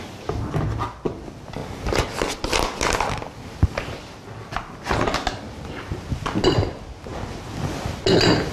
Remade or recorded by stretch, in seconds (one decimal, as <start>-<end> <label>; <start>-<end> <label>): 0.0-8.5 recorded